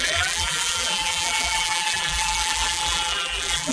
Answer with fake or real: fake